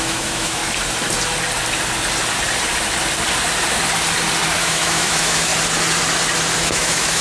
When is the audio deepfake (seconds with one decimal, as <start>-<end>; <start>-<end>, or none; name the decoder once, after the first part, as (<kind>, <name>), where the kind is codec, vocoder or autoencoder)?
0.0-0.6 (autoencoder, DAC-VAE); 4.6-5.5; 6.6-7.2